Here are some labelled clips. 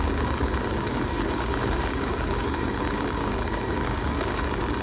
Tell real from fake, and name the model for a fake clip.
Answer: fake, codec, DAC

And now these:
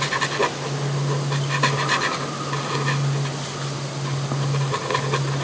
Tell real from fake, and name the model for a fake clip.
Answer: real